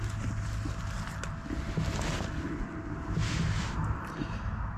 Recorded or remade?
recorded